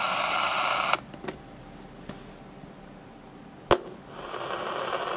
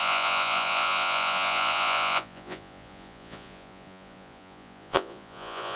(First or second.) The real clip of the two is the first